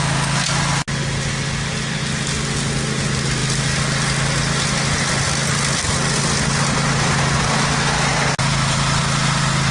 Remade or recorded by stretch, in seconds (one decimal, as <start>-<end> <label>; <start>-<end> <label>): 0.0-8.1 recorded; 8.1-9.0 remade; 9.0-9.7 recorded